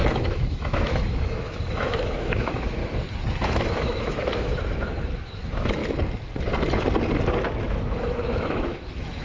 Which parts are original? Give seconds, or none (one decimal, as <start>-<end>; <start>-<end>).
2.8-3.4; 5.8-7.6